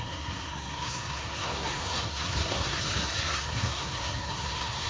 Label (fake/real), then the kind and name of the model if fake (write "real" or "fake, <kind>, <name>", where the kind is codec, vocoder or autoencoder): fake, codec, SNAC